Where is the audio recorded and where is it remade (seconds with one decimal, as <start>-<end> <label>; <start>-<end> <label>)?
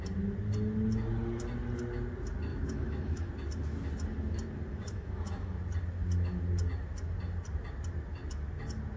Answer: 0.0-2.5 recorded; 2.5-3.3 remade; 3.3-4.7 recorded; 4.7-5.6 remade; 5.6-9.0 recorded